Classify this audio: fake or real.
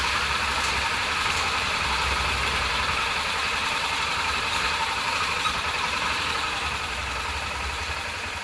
fake